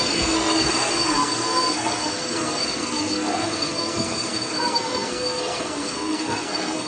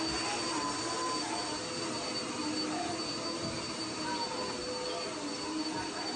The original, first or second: second